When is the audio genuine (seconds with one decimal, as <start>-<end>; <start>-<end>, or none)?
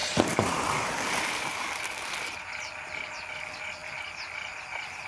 0.0-5.1